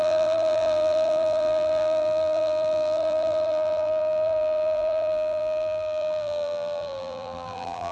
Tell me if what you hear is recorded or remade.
remade